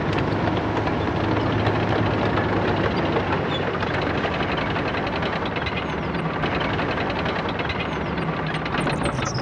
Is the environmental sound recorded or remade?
recorded